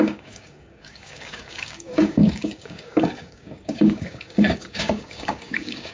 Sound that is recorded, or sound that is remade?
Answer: remade